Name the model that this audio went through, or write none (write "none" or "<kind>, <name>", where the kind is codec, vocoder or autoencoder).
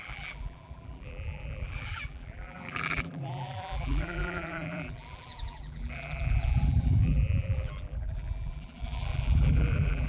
vocoder, BigVGAN v2